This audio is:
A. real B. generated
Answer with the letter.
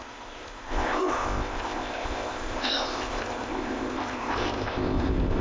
B